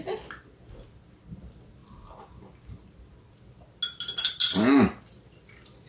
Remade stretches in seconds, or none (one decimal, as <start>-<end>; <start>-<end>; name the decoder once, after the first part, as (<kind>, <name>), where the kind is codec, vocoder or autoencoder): none